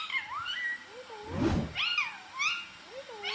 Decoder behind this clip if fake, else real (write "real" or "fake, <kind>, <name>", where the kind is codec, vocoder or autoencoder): real